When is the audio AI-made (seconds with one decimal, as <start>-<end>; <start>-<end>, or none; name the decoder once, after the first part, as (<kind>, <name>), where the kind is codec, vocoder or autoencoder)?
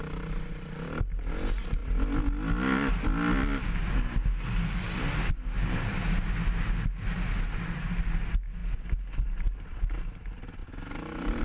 none